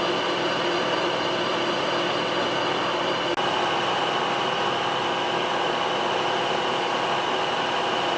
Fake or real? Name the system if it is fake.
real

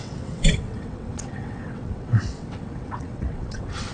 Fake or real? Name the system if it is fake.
fake, vocoder, WaveNeXt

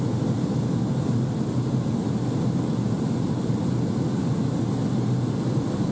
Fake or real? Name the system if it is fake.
real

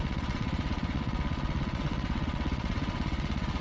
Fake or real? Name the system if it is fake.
fake, vocoder, WaveNeXt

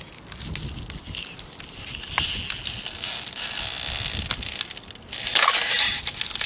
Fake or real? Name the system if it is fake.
real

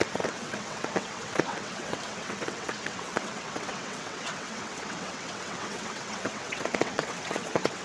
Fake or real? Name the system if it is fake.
fake, vocoder, WaveNeXt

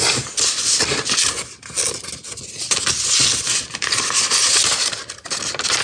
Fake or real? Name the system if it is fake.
real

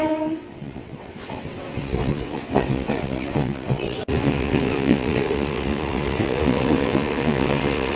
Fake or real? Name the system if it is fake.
fake, vocoder, WaveNeXt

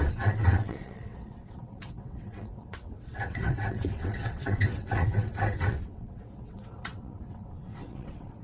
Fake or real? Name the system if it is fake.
fake, vocoder, WaveNeXt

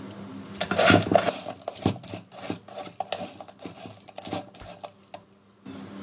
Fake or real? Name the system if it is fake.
real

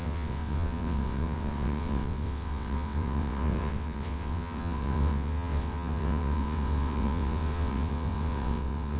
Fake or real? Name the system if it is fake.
fake, vocoder, WaveNeXt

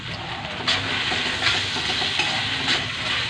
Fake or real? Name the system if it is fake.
real